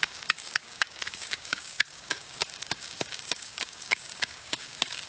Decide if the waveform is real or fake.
fake